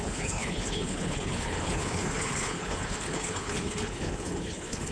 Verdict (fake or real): fake